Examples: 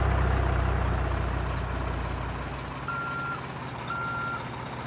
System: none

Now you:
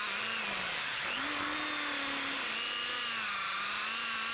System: none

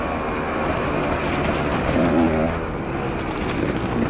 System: none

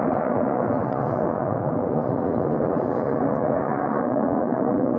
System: vocoder, Vocos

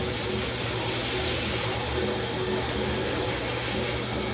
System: none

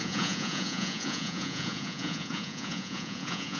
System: vocoder, Vocos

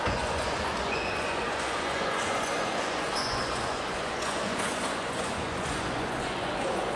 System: vocoder, Vocos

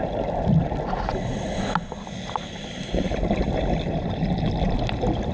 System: none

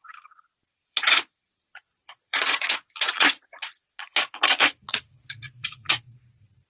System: vocoder, Vocos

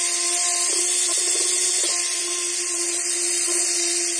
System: none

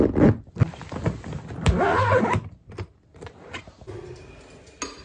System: none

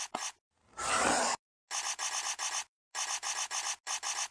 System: none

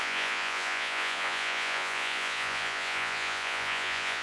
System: vocoder, Vocos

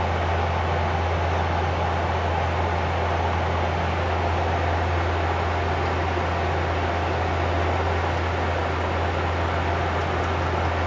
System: none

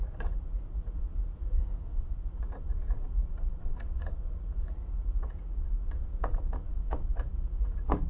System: vocoder, Vocos